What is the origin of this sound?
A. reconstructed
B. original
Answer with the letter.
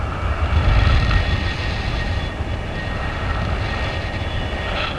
B